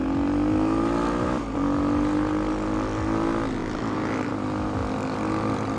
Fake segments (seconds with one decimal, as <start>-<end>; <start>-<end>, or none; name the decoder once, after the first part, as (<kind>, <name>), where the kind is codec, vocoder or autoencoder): none

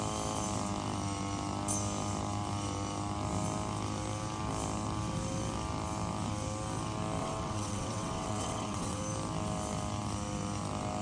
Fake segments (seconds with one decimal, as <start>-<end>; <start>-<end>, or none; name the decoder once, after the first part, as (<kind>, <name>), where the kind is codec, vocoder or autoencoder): 7.2-9.0 (vocoder, WaveNeXt)

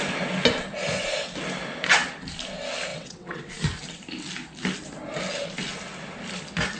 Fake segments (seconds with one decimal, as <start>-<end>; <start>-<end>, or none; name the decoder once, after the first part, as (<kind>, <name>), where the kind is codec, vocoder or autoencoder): 2.9-3.5 (vocoder, WaveNeXt)